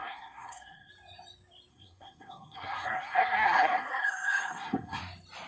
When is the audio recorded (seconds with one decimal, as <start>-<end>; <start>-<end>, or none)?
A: 0.9-1.7; 5.0-5.5